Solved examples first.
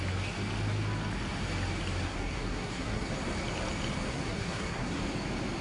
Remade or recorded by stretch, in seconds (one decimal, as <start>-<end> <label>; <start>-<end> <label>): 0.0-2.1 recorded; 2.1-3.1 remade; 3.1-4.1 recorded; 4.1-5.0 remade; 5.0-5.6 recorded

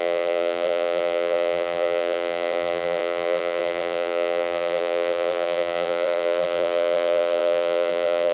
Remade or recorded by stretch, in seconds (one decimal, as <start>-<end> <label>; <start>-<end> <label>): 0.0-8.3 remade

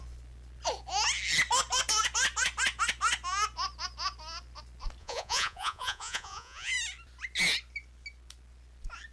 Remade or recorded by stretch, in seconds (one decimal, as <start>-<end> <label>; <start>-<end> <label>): 0.0-5.0 recorded; 5.0-6.7 remade; 6.7-9.1 recorded

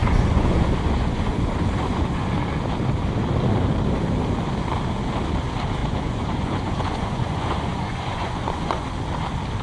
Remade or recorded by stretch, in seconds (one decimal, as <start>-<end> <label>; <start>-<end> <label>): 0.0-2.4 remade; 2.4-5.8 recorded; 5.8-8.9 remade; 8.9-9.6 recorded

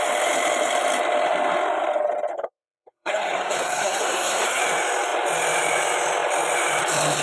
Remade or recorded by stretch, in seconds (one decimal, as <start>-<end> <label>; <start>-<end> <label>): 0.0-2.3 recorded; 2.3-4.6 remade; 4.6-7.2 recorded